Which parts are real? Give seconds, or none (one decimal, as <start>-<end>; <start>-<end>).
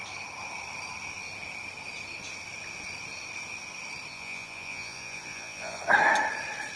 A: 0.0-4.1; 5.8-6.8